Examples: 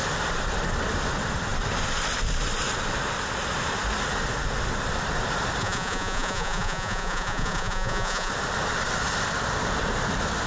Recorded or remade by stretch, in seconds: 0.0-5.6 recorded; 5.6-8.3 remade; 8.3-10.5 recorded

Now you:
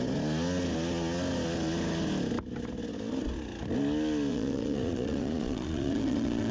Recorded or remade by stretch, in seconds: 0.0-4.3 recorded; 4.3-6.5 remade

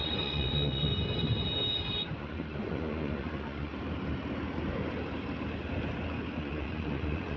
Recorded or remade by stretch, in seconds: 0.0-0.9 remade; 0.9-2.2 recorded; 2.2-3.7 remade; 3.7-6.4 recorded; 6.4-7.4 remade